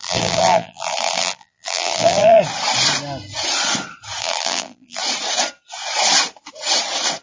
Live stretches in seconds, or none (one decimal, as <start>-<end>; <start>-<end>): 2.4-4.2; 5.0-7.2